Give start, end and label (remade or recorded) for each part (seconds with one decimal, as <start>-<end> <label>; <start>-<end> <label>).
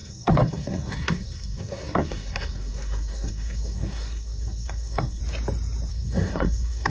0.0-5.2 remade; 5.2-5.9 recorded; 5.9-6.9 remade